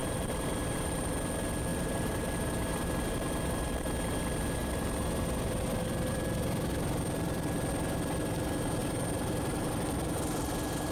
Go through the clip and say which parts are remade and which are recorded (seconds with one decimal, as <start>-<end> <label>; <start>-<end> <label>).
0.0-1.1 remade; 1.1-1.7 recorded; 1.7-2.3 remade; 2.3-8.8 recorded; 8.8-9.7 remade; 9.7-10.9 recorded